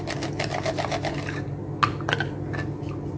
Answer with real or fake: real